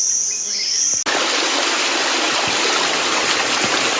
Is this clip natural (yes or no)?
yes